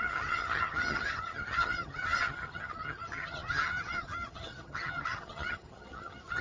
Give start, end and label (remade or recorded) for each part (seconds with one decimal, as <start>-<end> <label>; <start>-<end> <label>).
0.0-6.4 remade